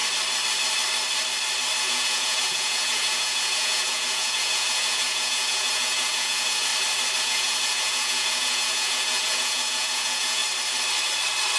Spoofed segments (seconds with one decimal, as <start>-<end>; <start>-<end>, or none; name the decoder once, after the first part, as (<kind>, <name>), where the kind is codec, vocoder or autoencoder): 1.8-6.7 (vocoder, Vocos); 7.2-10.4